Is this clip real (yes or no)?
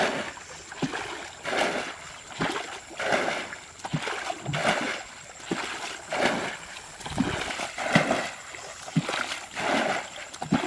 yes